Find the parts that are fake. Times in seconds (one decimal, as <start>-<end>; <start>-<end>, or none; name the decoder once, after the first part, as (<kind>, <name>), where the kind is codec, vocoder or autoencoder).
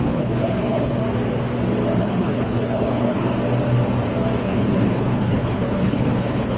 0.0-1.0 (codec, HILCodec); 2.0-3.3; 4.4-6.6